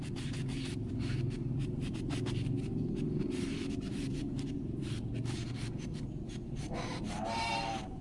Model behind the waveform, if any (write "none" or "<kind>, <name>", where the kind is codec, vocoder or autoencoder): vocoder, BigVGAN v2